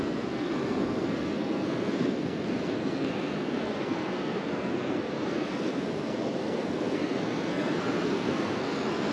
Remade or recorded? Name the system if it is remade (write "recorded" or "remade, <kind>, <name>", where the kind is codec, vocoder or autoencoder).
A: remade, codec, SNAC